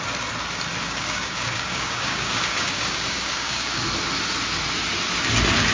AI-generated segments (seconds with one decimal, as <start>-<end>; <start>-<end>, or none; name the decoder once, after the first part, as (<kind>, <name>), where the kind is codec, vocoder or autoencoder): 0.8-3.8 (codec, DAC)